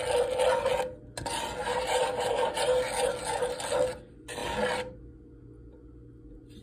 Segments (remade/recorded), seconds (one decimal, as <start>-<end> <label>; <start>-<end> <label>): 0.0-1.6 recorded; 1.6-2.8 remade; 2.8-6.6 recorded